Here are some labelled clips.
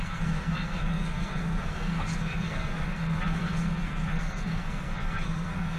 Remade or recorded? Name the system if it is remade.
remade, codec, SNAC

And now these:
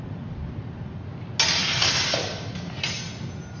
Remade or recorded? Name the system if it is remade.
recorded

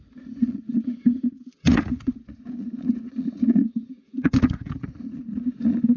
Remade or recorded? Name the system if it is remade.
remade, vocoder, Vocos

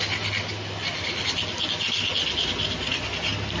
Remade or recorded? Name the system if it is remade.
recorded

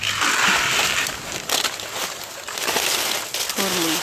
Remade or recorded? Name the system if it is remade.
recorded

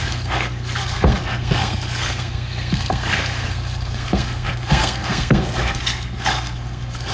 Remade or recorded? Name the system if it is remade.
remade, codec, SNAC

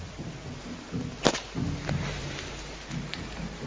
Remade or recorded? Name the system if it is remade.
recorded